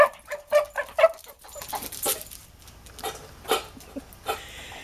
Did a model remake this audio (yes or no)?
no